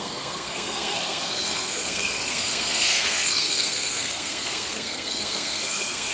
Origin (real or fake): fake